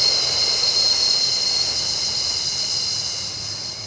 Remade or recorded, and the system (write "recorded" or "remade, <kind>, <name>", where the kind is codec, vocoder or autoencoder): recorded